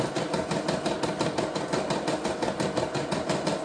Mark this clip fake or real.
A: real